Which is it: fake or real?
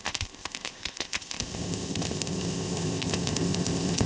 fake